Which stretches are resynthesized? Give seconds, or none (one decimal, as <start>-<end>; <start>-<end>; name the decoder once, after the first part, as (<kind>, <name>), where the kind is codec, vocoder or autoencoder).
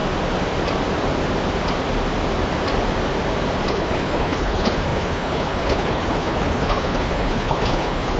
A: 3.7-8.2 (codec, HILCodec)